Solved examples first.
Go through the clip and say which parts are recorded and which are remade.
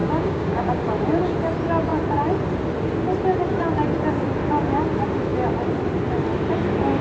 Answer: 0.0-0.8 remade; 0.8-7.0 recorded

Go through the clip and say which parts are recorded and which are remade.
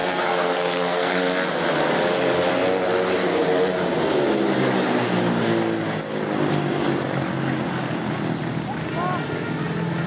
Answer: 0.0-1.2 remade; 1.2-10.1 recorded